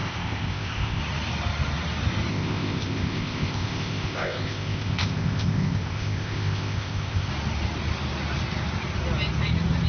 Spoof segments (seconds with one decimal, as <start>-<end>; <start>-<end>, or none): 0.0-1.0; 2.3-7.3